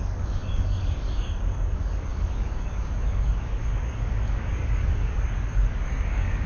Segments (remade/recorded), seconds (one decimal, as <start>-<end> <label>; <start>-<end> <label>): 0.0-6.5 remade